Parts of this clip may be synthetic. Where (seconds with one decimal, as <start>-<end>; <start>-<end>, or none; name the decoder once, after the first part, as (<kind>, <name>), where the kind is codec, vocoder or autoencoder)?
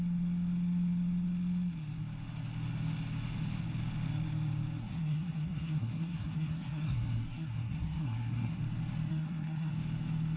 4.8-8.6 (codec, SNAC); 9.1-9.7